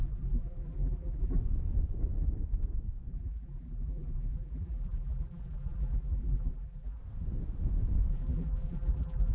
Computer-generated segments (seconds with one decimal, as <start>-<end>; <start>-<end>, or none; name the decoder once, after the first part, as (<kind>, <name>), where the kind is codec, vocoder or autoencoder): 0.0-1.4 (vocoder, BigVGAN v2); 3.1-7.0; 8.1-9.3